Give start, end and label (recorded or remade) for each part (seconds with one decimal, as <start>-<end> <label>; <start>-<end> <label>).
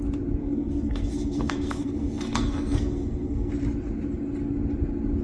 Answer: 0.0-0.4 recorded; 0.4-3.5 remade; 3.5-5.2 recorded